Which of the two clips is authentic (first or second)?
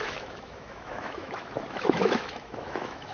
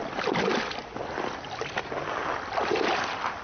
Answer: second